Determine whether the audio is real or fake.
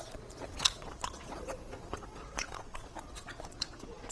fake